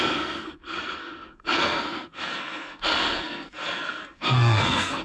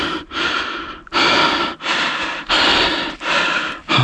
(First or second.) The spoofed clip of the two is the first